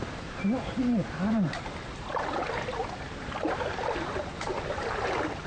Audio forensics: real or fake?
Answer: fake